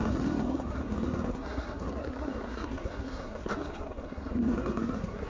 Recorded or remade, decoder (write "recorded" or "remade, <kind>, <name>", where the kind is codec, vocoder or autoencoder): remade, codec, SNAC